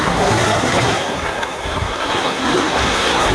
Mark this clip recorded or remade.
remade